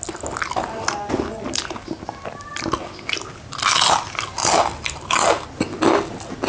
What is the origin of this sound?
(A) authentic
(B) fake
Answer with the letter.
A